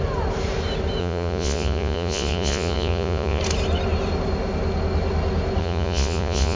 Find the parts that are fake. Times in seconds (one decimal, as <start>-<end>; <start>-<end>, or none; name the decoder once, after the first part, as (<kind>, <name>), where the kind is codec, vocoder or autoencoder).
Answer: 1.0-3.4 (vocoder, Vocos); 5.6-6.6